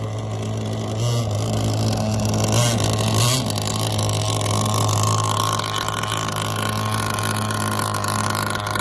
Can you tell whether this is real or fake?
real